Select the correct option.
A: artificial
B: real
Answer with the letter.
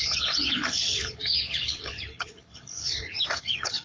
A